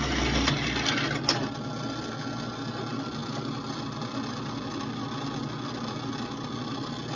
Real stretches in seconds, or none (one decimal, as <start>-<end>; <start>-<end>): 0.0-7.2